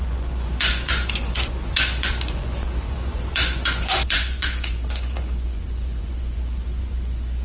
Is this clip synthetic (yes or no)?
yes